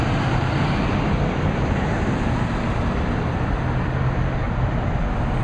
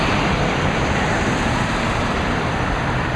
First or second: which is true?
first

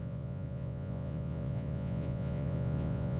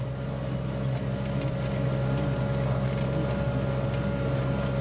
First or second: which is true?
second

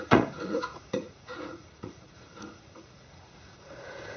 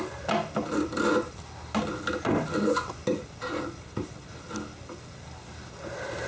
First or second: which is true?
second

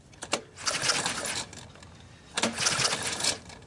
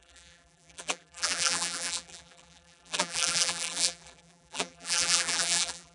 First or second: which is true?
first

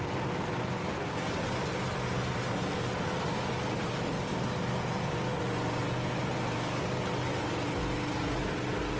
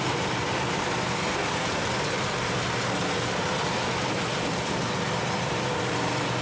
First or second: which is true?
first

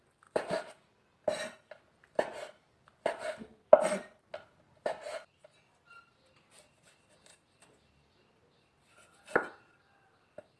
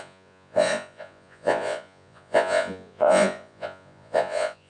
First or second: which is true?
first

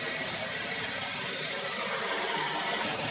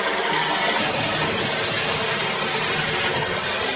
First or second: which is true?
second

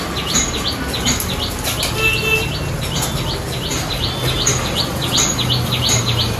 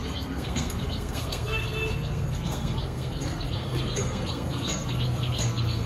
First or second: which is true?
first